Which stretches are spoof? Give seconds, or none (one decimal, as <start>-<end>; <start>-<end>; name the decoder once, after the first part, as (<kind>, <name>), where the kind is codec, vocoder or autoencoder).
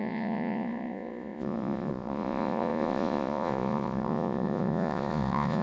0.0-5.6 (vocoder, Vocos)